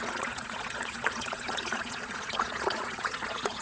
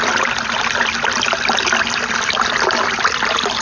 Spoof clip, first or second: first